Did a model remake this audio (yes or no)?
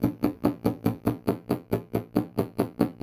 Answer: yes